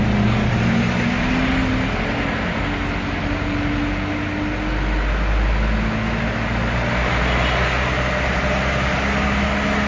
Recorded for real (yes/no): yes